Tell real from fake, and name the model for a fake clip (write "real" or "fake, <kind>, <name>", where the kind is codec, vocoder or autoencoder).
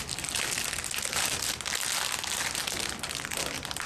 real